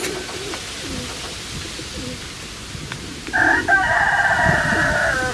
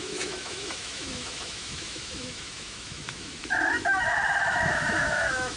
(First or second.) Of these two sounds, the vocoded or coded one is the second